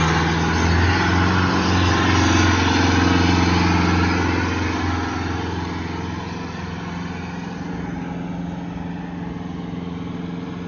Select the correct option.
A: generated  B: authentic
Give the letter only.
B